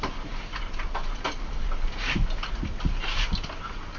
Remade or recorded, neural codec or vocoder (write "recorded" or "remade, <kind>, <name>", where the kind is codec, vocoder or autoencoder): recorded